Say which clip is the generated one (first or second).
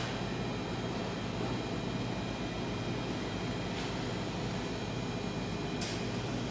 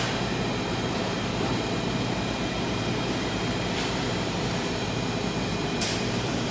second